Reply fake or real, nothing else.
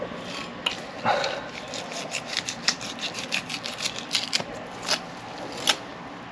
real